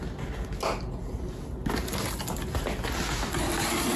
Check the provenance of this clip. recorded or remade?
recorded